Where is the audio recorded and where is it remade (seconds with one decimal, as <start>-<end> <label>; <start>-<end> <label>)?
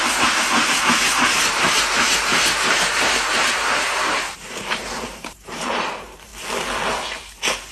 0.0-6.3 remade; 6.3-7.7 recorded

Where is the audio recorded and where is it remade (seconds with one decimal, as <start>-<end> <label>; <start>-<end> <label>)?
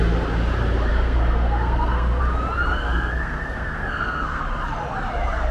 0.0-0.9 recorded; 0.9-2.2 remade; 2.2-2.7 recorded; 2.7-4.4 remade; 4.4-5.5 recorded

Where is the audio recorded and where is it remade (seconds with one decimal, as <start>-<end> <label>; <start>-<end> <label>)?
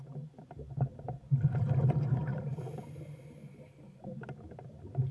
0.0-5.1 recorded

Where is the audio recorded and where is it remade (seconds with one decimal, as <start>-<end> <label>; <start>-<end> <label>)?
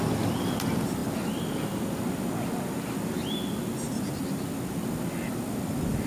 0.0-6.1 recorded